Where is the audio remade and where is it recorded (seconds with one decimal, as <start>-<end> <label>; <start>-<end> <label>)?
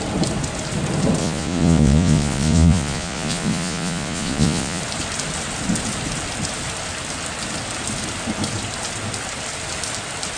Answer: 0.0-1.2 recorded; 1.2-4.8 remade; 4.8-10.4 recorded